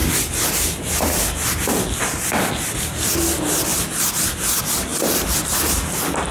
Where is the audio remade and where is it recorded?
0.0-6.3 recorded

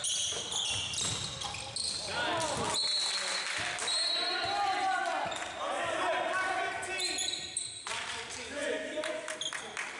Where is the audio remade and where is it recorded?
0.0-10.0 recorded

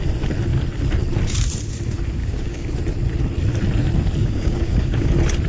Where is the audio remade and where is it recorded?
0.0-2.2 recorded; 2.2-2.7 remade; 2.7-4.2 recorded; 4.2-5.1 remade; 5.1-5.5 recorded

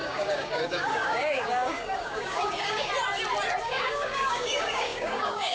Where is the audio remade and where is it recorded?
0.0-2.9 remade; 2.9-3.6 recorded; 3.6-5.5 remade

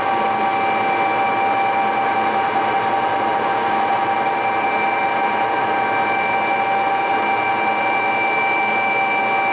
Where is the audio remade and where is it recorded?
0.0-9.5 recorded

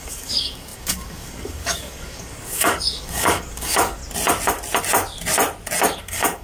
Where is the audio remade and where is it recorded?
0.0-4.0 remade; 4.0-6.0 recorded; 6.0-6.4 remade

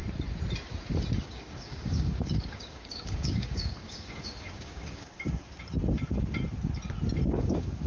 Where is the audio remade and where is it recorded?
0.0-1.2 recorded; 1.2-5.5 remade; 5.5-7.3 recorded; 7.3-7.9 remade